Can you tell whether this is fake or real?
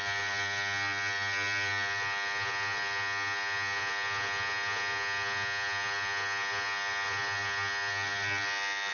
real